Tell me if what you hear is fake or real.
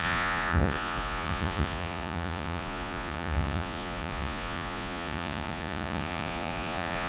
fake